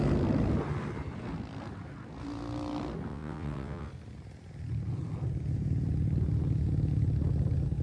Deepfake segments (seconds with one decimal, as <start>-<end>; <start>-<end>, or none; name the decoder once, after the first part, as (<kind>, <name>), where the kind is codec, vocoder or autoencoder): 3.1-3.9 (vocoder, WaveNeXt)